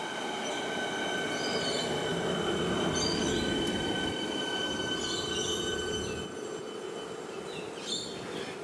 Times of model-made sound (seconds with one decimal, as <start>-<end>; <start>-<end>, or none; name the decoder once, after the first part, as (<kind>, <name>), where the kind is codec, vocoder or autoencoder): none